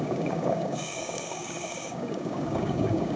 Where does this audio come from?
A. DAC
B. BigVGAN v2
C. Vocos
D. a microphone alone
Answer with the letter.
A